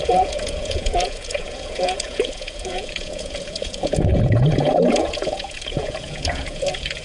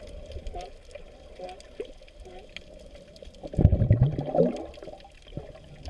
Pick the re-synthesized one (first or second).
first